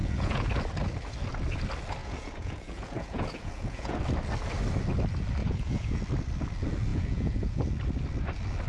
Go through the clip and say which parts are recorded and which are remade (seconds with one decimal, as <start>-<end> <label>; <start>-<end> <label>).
0.0-0.5 remade; 0.5-2.0 recorded; 2.0-4.0 remade; 4.0-5.4 recorded; 5.4-6.0 remade; 6.0-6.9 recorded; 6.9-7.7 remade; 7.7-8.7 recorded